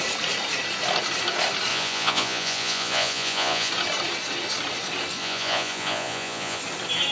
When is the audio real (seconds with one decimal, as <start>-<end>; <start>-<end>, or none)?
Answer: 0.0-1.7; 3.7-5.2; 6.6-7.1